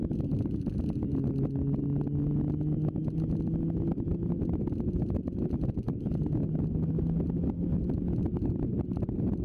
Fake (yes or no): no